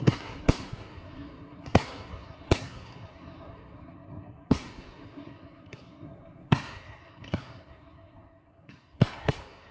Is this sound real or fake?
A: fake